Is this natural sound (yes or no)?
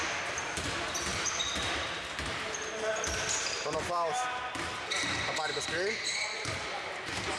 yes